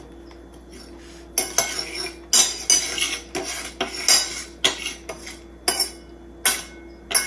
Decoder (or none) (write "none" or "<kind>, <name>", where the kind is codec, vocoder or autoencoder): none